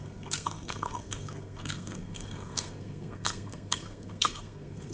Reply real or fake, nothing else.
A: fake